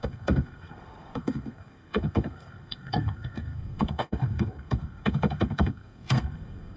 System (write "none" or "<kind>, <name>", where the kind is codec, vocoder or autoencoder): codec, SNAC